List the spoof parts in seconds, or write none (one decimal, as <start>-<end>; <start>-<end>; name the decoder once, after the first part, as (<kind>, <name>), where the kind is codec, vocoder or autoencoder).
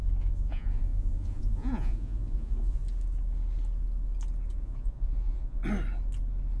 0.0-2.8 (vocoder, Vocos); 4.6-5.6